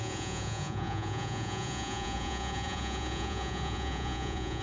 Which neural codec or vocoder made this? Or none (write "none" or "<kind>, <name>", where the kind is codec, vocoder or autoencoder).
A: vocoder, Vocos